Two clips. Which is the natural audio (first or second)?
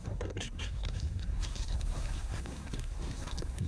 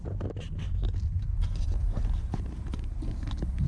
second